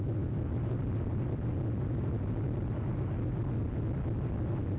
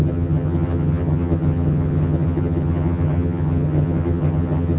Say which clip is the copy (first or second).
second